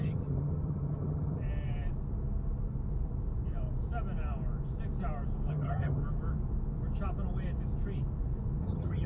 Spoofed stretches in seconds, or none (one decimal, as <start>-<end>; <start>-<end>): 0.0-1.4; 5.5-6.0; 8.6-9.1